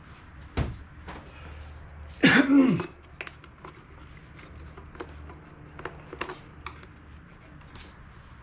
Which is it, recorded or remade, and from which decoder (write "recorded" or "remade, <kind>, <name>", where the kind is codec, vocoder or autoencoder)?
recorded